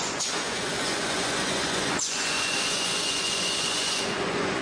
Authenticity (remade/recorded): remade